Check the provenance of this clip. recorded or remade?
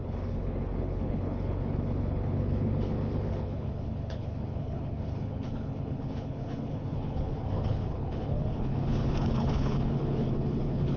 remade